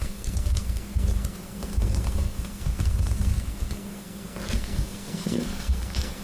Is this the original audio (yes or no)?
no